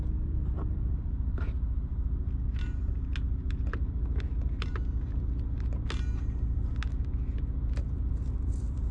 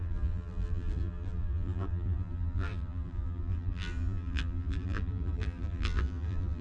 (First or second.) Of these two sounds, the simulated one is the second